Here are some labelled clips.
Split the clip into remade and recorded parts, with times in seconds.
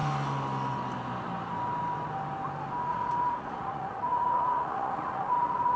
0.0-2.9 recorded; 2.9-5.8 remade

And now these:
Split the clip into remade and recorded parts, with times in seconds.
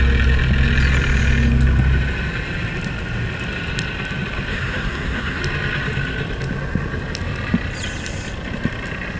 0.0-4.5 recorded; 4.5-5.4 remade; 5.4-9.2 recorded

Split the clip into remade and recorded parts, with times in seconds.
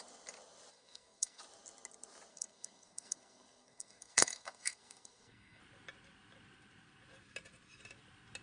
0.0-0.7 recorded; 0.7-1.4 remade; 1.4-2.3 recorded; 2.3-5.6 remade; 5.6-8.4 recorded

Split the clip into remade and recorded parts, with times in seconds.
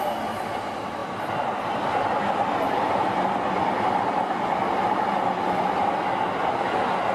0.0-7.1 recorded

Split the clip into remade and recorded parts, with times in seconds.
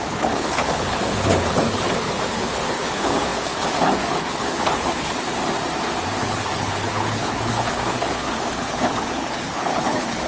0.0-5.4 remade; 5.4-6.2 recorded; 6.2-10.3 remade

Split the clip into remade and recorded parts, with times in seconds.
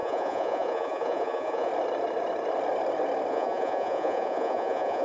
0.0-1.7 remade; 1.7-3.3 recorded; 3.3-5.0 remade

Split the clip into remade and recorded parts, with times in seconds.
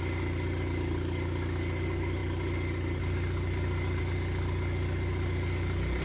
0.0-6.0 recorded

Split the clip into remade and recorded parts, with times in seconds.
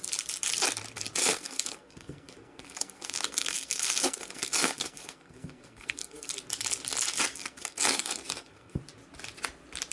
0.0-1.2 recorded; 1.2-6.3 remade; 6.3-7.3 recorded; 7.3-8.8 remade; 8.8-9.9 recorded